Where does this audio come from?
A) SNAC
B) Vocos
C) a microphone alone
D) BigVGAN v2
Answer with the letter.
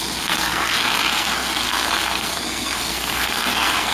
A